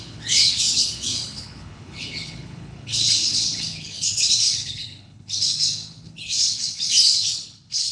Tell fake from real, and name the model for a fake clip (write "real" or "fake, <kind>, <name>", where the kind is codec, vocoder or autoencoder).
fake, codec, HILCodec